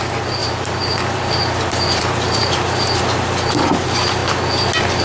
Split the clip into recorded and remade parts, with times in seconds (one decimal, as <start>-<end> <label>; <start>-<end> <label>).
0.0-0.4 recorded; 0.4-3.0 remade; 3.0-5.0 recorded